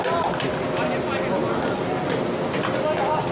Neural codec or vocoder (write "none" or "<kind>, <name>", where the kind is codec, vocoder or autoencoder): none